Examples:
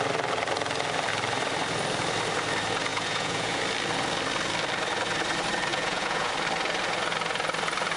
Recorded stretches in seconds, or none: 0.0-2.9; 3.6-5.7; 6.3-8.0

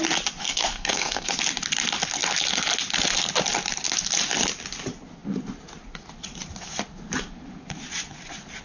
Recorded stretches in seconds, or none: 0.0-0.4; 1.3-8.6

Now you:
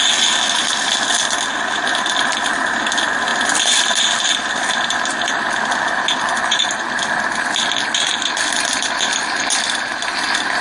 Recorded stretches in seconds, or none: 0.0-3.3; 3.8-8.1; 9.4-10.6

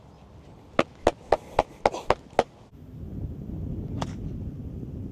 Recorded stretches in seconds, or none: 0.0-5.1

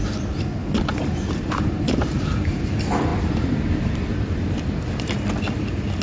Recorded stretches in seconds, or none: 0.0-0.9; 2.2-3.1; 4.5-6.0